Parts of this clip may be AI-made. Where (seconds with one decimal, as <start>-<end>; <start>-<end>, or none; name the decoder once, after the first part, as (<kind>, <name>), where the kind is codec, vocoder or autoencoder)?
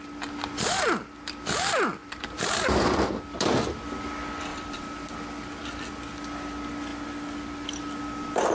2.0-2.9 (vocoder, BigVGAN v2); 4.5-5.1